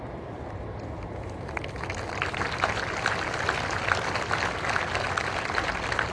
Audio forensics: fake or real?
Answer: real